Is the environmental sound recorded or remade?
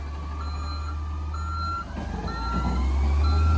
recorded